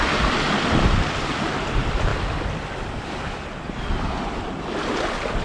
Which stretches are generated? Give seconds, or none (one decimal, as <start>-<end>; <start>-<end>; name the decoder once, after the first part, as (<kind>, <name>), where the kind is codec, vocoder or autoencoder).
none